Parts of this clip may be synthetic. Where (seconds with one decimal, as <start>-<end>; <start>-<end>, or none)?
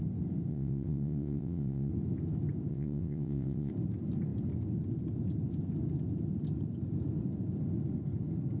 0.5-1.9; 2.7-3.7